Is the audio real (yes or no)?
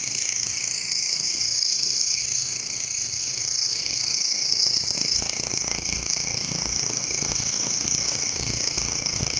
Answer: no